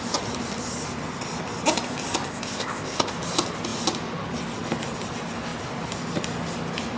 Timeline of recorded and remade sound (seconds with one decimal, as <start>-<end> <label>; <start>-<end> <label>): 0.0-2.3 recorded; 2.3-3.1 remade; 3.1-7.0 recorded